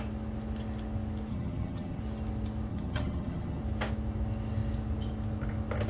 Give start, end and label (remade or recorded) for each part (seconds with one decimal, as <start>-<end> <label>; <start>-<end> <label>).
0.0-1.3 recorded; 1.3-2.0 remade; 2.0-2.7 recorded; 2.7-3.6 remade; 3.6-5.9 recorded